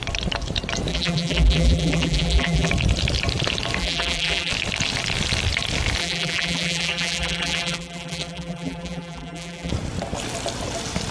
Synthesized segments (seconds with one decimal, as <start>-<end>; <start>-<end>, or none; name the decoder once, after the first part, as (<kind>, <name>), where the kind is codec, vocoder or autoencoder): 0.9-2.7 (vocoder, BigVGAN v2); 3.8-4.5; 6.0-9.7